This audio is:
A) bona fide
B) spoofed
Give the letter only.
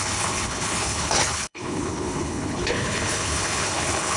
B